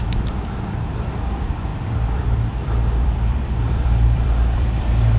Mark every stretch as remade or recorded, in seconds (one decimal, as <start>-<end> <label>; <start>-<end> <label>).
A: 0.0-5.2 remade